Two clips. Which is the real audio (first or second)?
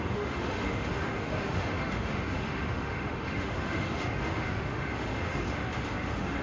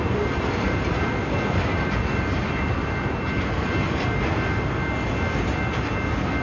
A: second